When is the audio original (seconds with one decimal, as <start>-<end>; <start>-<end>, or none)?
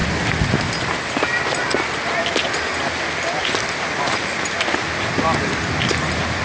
0.0-6.4